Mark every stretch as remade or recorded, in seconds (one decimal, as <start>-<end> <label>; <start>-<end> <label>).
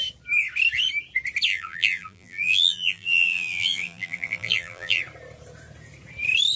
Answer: 0.0-1.5 recorded; 1.5-5.0 remade; 5.0-6.6 recorded